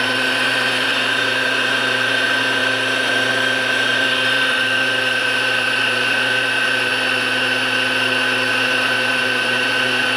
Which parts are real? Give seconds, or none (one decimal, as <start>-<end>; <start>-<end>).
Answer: 2.6-3.3; 6.9-8.5

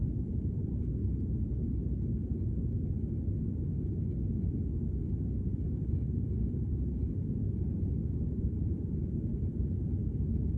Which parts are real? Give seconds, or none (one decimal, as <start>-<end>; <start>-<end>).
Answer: 1.0-5.9; 7.0-8.4

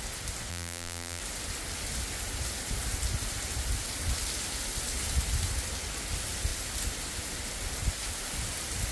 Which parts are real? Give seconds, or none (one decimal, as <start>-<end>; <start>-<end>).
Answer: 0.0-0.5; 1.2-8.9

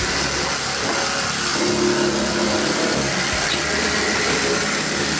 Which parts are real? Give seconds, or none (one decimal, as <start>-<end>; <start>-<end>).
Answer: 0.0-5.2

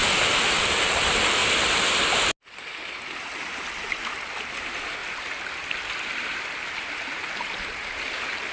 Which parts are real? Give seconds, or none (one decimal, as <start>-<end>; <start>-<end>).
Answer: 0.6-5.0; 6.9-8.5

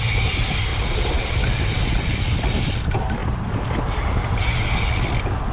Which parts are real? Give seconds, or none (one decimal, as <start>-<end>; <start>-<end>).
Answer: 0.0-0.7; 1.4-3.2; 3.8-5.5

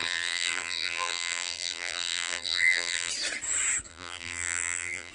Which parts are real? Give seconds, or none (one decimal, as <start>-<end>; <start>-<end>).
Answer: 3.1-3.9